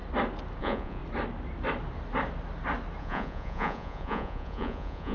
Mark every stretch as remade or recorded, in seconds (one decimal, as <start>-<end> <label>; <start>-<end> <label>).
0.0-0.6 recorded; 0.6-1.0 remade; 1.0-3.0 recorded; 3.0-5.1 remade